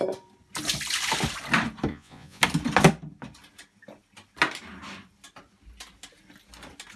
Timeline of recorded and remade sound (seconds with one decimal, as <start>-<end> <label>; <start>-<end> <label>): 0.0-1.9 recorded; 1.9-2.4 remade; 2.4-7.0 recorded